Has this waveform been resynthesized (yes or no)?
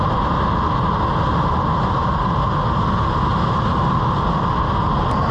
no